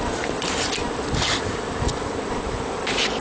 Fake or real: real